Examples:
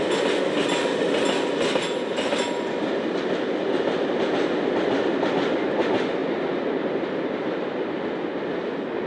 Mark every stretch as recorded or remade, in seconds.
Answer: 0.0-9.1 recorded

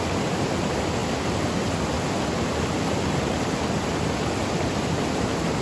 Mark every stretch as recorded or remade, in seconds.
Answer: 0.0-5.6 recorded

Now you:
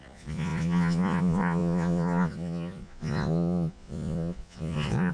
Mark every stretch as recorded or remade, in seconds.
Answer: 0.0-5.1 remade

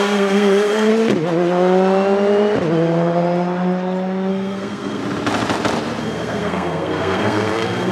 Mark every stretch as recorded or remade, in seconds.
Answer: 0.0-0.9 remade; 0.9-4.3 recorded; 4.3-5.0 remade; 5.0-6.0 recorded; 6.0-7.9 remade

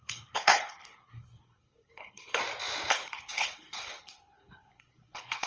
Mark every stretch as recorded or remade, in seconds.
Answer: 0.0-2.4 remade; 2.4-2.9 recorded; 2.9-5.5 remade

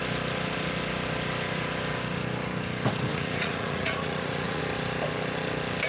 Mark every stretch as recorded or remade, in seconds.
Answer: 0.0-3.1 recorded; 3.1-4.6 remade; 4.6-5.9 recorded